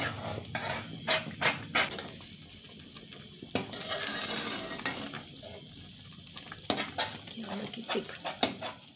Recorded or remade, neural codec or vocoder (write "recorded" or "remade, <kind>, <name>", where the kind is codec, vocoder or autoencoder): recorded